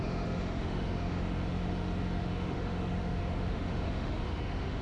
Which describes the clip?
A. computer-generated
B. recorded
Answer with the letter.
A